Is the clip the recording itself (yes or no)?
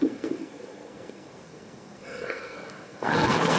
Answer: no